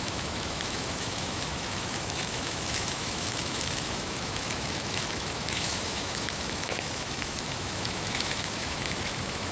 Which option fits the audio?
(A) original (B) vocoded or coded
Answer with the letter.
B